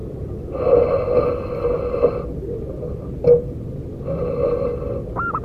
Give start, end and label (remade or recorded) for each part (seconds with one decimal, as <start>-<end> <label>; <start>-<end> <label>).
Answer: 0.0-5.4 recorded